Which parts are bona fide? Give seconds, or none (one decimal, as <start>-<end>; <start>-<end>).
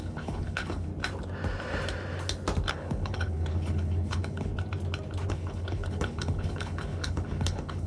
0.9-2.7; 4.5-5.3